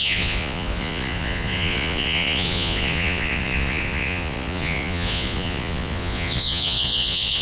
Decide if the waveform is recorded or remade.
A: remade